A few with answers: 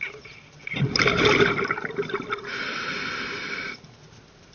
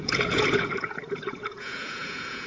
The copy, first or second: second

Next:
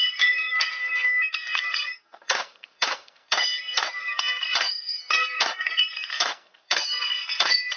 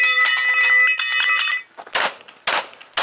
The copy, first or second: first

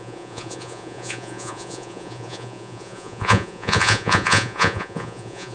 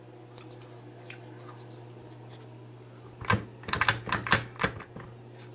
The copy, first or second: first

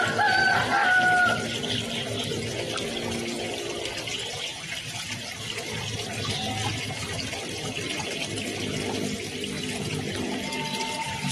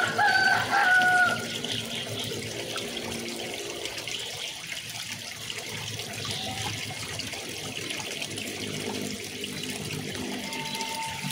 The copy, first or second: second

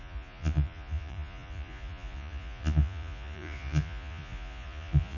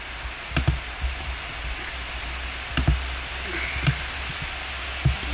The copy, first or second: first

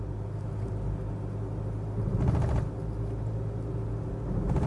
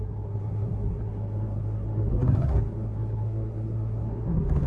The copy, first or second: second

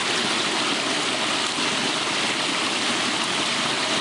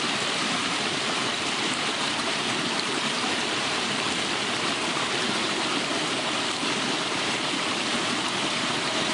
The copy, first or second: second